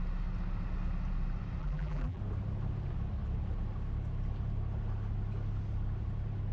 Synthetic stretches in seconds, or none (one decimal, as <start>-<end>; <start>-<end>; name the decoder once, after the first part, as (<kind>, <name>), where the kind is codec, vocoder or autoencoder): 1.6-2.2 (vocoder, BigVGAN v2)